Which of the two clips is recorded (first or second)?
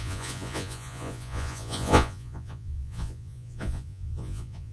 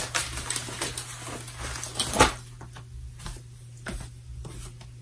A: second